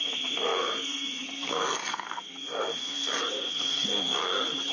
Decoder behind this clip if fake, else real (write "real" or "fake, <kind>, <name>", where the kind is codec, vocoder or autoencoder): fake, codec, SNAC